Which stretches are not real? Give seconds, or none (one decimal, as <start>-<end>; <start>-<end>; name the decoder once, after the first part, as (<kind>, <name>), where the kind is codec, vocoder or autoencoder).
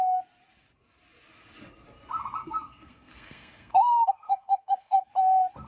2.4-5.1 (codec, SNAC)